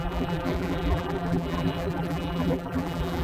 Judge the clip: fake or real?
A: fake